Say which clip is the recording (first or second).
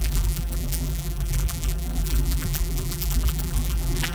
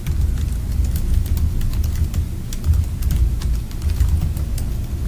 second